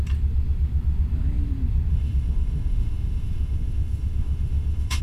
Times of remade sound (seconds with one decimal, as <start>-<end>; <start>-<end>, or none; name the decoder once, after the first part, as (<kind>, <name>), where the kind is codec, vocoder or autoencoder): 1.9-5.0 (autoencoder, DAC-VAE)